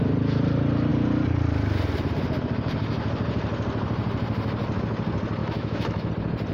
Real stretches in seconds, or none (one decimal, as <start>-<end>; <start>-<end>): 0.0-5.4; 6.1-6.5